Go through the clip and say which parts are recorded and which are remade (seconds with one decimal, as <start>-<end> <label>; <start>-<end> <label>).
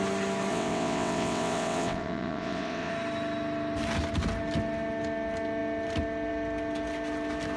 0.0-0.5 recorded; 0.5-2.9 remade; 2.9-7.6 recorded